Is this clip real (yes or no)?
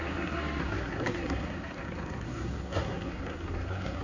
no